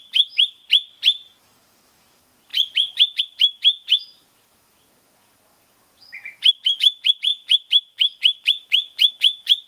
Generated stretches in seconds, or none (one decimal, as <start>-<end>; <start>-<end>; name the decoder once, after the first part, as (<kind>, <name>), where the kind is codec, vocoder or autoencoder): 0.0-0.6 (autoencoder, DAC-VAE); 1.4-9.7